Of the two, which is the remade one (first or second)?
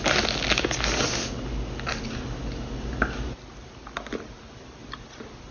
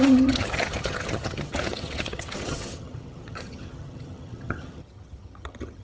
second